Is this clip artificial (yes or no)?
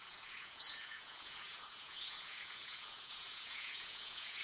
yes